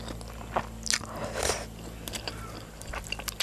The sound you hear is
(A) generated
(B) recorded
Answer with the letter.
B